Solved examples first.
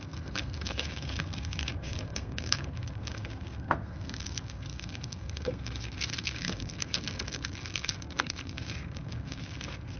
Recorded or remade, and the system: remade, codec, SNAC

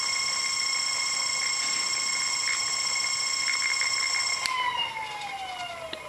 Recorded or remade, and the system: recorded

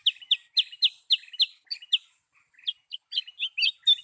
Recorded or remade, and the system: recorded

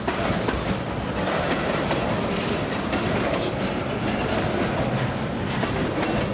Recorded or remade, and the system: recorded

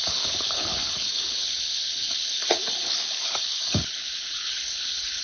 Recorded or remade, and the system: remade, codec, HILCodec